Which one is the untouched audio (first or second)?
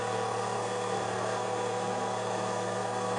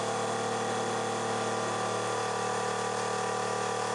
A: second